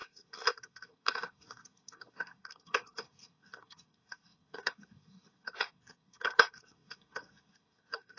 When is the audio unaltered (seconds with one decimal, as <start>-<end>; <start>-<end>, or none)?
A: none